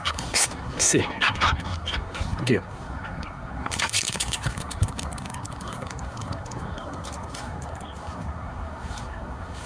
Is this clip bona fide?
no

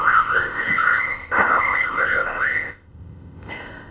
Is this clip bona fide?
no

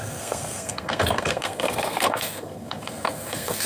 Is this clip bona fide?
no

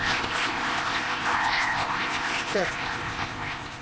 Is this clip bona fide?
no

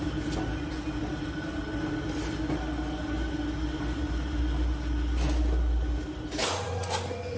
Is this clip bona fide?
yes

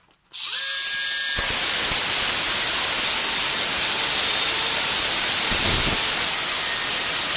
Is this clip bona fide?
yes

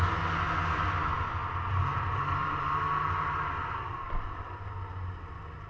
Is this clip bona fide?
yes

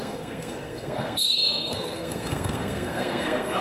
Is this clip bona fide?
no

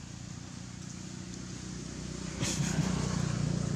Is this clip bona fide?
yes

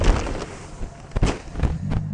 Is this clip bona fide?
yes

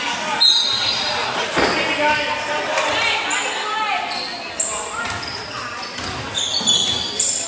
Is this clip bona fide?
yes